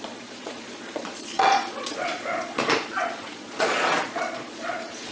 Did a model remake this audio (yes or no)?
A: yes